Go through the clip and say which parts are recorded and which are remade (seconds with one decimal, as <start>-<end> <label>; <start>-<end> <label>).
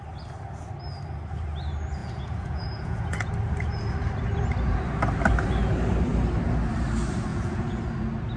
0.0-2.0 recorded; 2.0-3.3 remade; 3.3-7.3 recorded; 7.3-7.8 remade; 7.8-8.4 recorded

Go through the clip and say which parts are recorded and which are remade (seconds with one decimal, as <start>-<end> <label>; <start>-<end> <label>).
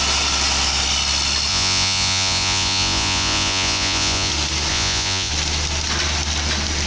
0.0-1.5 recorded; 1.5-4.3 remade; 4.3-4.7 recorded; 4.7-5.3 remade; 5.3-6.9 recorded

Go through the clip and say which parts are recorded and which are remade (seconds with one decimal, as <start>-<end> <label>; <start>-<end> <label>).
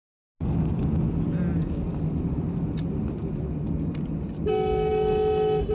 0.0-5.7 recorded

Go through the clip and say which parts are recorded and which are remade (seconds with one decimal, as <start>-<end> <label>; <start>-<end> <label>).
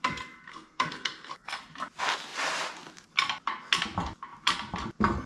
0.0-0.5 recorded; 0.5-1.6 remade; 1.6-5.3 recorded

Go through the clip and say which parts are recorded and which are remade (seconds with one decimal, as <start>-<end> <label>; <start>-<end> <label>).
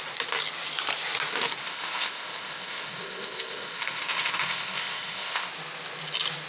0.0-1.6 recorded; 1.6-5.5 remade; 5.5-6.5 recorded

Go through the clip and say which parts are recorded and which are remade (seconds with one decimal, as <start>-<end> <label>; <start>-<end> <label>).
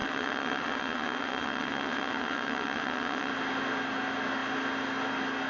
0.0-3.3 remade; 3.3-5.5 recorded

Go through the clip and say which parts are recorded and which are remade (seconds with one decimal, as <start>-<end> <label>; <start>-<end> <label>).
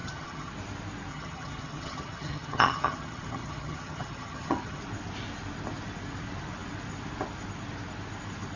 0.0-0.5 remade; 0.5-1.1 recorded; 1.1-4.8 remade; 4.8-8.6 recorded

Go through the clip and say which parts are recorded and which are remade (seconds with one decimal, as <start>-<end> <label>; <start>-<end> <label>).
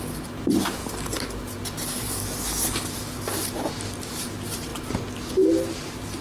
0.0-0.8 remade; 0.8-3.7 recorded; 3.7-4.7 remade; 4.7-5.5 recorded; 5.5-6.2 remade